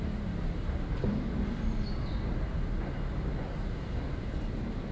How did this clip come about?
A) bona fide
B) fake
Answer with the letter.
A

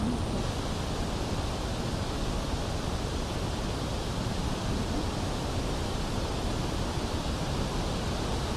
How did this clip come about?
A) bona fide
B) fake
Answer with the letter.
A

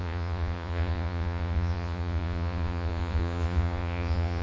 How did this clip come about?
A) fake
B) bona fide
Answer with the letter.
A